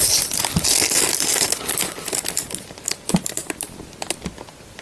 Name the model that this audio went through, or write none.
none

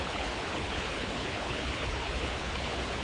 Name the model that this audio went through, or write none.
codec, HILCodec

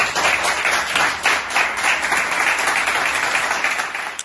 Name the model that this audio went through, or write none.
none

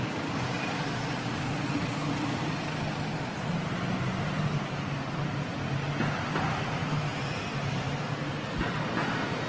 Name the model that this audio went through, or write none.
none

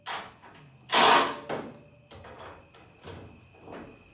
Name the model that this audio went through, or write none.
none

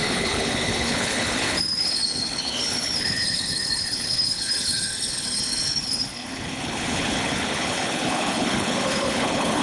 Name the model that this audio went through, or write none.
codec, HILCodec